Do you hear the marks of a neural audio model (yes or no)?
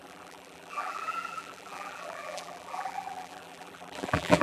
yes